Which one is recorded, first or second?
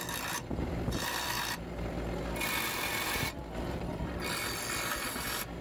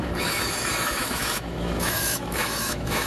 first